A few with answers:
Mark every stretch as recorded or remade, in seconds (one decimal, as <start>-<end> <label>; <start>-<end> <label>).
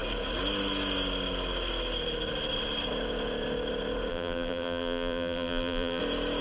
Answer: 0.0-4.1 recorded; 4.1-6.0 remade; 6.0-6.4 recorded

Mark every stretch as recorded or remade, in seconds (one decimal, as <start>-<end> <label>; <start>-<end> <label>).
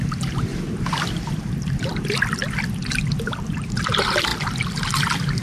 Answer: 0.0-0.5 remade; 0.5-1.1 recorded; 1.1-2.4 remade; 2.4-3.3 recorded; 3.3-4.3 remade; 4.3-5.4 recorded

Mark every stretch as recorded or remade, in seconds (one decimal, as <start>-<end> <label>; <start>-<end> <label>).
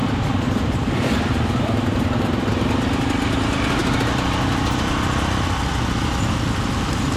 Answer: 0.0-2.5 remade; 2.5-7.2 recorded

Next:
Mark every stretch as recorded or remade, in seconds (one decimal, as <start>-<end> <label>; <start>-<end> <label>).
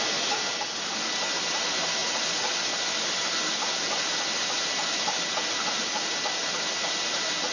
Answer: 0.0-7.5 recorded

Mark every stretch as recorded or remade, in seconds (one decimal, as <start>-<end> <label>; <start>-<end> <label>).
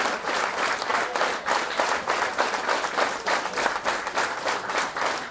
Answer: 0.0-5.3 recorded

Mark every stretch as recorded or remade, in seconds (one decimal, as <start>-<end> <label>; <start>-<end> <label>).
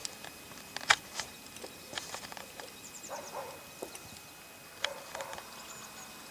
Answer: 0.0-3.1 remade; 3.1-6.3 recorded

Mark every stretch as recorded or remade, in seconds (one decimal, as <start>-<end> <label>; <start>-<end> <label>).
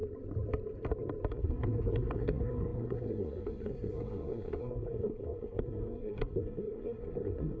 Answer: 0.0-1.3 recorded; 1.3-7.6 remade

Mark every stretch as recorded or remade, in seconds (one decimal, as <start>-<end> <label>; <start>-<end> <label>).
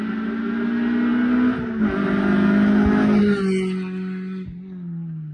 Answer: 0.0-5.3 recorded